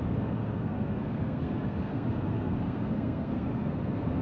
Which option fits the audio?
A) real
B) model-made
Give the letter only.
B